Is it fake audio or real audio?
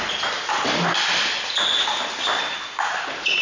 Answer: real